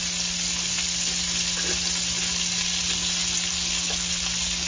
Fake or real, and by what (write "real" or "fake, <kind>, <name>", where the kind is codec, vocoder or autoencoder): real